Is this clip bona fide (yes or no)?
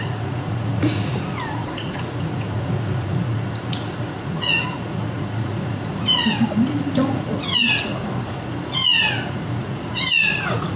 no